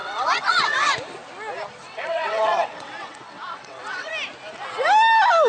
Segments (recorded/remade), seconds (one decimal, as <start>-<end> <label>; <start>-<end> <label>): 0.0-0.9 remade; 0.9-1.8 recorded; 1.8-4.1 remade; 4.1-5.5 recorded